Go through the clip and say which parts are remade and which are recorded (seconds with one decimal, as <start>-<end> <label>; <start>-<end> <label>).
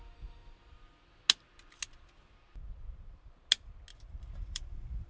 0.0-3.9 recorded; 3.9-5.1 remade